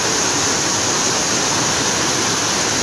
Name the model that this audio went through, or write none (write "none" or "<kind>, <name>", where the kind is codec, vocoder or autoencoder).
none